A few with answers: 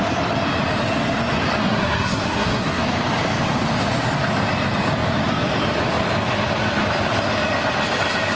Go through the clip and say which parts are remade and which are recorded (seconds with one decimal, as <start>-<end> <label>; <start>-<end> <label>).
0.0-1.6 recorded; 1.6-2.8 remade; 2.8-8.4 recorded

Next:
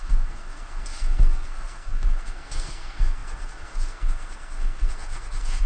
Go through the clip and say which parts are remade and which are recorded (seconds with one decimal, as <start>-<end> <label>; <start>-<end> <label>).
0.0-5.7 remade

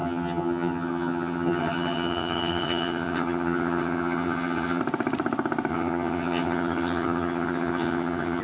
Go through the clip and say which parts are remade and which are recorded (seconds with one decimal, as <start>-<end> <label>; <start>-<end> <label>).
0.0-4.8 remade; 4.8-5.7 recorded; 5.7-8.4 remade